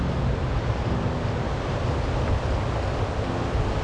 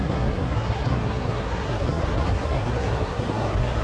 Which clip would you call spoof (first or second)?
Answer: second